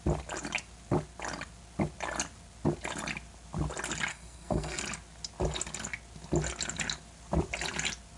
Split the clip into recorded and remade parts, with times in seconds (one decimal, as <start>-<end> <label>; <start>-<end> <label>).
0.0-4.1 recorded; 4.1-4.8 remade; 4.8-8.2 recorded